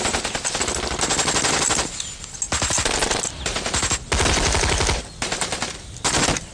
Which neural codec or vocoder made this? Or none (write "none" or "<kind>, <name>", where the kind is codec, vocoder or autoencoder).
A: none